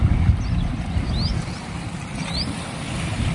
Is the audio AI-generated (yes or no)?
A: no